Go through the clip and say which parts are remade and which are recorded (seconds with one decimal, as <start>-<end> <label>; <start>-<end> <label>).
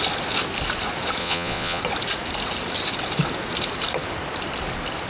0.0-1.2 recorded; 1.2-1.8 remade; 1.8-5.1 recorded